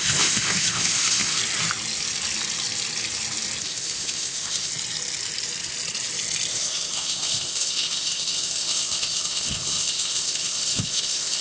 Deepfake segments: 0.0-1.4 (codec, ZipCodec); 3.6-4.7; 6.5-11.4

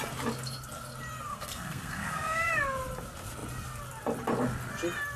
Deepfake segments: 1.3-2.5 (codec, SNAC)

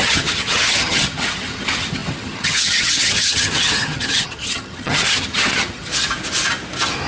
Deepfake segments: 0.0-5.9 (vocoder, HiFi-GAN)

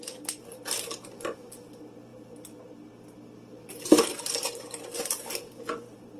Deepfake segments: none

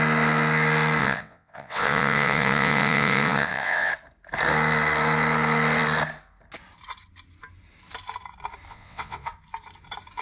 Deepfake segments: 1.0-3.9 (vocoder, WaveNeXt); 8.7-9.3